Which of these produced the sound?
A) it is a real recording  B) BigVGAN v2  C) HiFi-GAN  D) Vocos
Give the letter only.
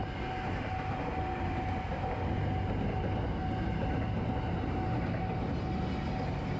A